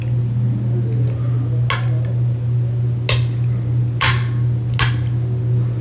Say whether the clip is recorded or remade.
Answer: recorded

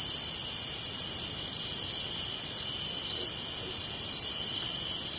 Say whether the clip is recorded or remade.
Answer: recorded